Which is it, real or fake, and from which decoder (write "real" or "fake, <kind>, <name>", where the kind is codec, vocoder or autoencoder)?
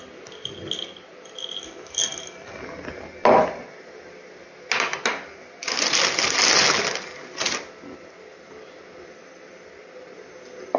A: real